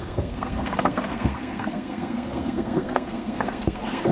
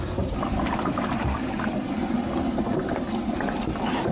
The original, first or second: second